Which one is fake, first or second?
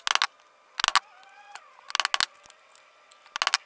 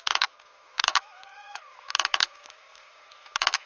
second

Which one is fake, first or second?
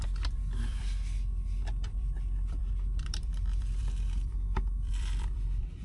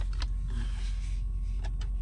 first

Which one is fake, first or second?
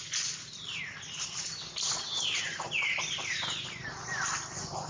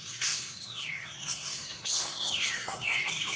second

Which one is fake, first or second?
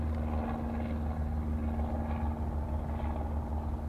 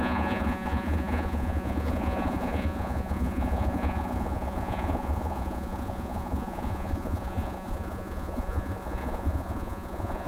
second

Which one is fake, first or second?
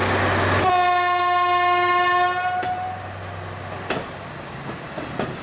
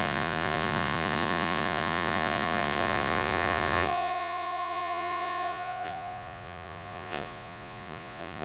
second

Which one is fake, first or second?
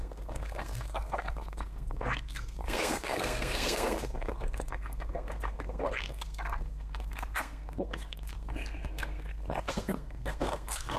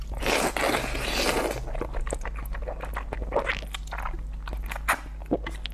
first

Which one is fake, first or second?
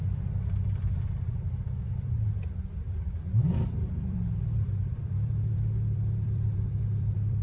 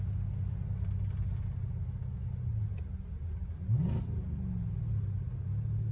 first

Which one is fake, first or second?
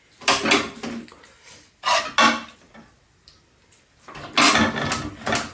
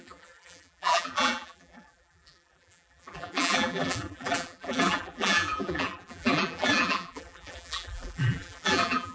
second